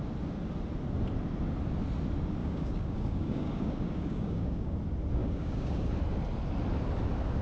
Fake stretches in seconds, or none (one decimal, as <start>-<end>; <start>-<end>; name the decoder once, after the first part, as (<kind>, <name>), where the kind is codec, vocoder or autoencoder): 2.4-4.8 (codec, DAC); 5.2-5.9